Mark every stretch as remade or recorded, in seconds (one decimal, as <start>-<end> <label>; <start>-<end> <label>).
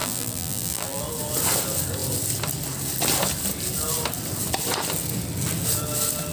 0.0-1.0 remade; 1.0-6.3 recorded